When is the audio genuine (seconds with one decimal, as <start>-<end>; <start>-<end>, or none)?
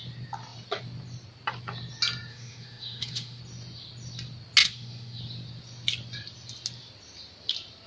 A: 0.0-2.3; 3.4-4.6; 5.2-7.9